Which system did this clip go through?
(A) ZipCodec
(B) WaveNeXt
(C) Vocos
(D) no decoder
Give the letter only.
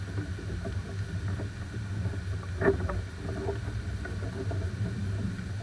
D